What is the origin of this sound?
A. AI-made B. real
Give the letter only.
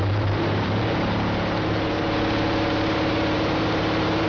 A